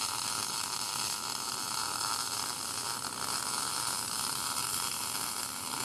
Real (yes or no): yes